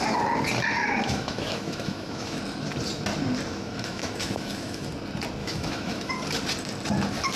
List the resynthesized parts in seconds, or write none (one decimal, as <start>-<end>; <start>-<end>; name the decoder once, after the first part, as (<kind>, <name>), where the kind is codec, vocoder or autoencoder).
0.8-2.4 (autoencoder, DAC-VAE); 3.5-4.9; 5.4-6.1